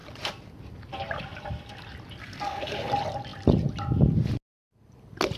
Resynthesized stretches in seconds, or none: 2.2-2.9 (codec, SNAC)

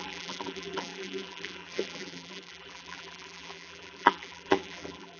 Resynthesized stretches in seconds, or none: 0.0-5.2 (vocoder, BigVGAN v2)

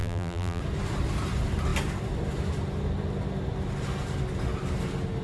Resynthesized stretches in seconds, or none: 0.0-0.6 (vocoder, BigVGAN v2)